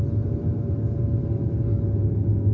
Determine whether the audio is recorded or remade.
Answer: recorded